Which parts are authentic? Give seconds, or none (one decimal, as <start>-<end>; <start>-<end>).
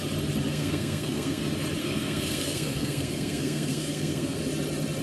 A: 0.0-0.5; 1.4-1.8; 4.4-5.0